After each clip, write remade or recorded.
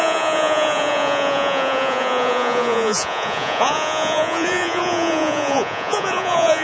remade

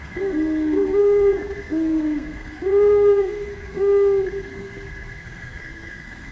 remade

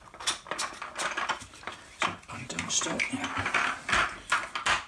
recorded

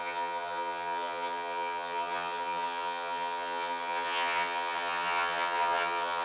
remade